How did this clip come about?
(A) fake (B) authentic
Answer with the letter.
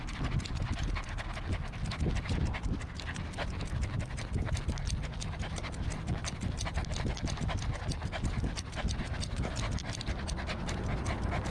B